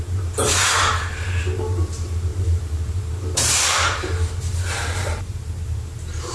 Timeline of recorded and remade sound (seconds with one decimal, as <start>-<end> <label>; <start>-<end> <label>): 0.0-6.3 remade